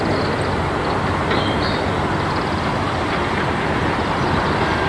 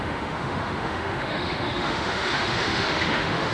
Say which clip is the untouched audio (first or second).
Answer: first